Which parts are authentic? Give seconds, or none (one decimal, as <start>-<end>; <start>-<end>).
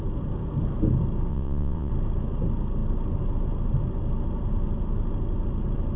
0.0-1.3; 1.9-6.0